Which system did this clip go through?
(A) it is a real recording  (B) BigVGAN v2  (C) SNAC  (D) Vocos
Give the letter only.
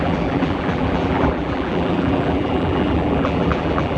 B